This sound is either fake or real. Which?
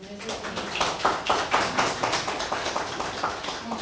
real